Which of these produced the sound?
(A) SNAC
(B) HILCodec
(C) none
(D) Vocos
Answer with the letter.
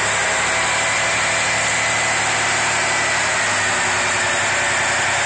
C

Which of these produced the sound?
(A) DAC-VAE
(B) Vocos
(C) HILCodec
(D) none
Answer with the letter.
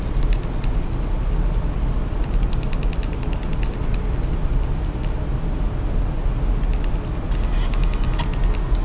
D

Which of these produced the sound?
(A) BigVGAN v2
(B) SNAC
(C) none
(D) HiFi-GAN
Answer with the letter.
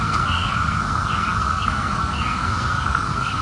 B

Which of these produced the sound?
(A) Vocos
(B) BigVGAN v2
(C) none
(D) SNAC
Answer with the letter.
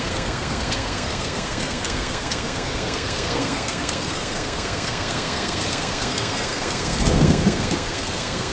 D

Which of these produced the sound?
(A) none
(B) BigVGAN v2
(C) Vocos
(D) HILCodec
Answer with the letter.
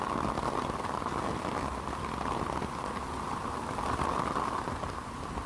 A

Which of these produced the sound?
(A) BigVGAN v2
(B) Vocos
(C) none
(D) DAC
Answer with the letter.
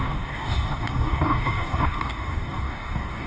D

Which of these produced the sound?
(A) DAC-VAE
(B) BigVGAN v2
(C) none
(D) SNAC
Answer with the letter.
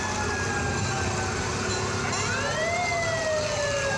C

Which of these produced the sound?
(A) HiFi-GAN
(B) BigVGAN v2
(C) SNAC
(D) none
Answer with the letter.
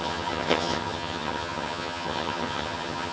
A